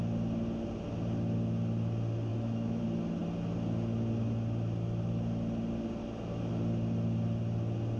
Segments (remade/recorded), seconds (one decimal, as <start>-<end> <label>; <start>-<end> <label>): 0.0-2.3 recorded; 2.3-2.8 remade; 2.8-8.0 recorded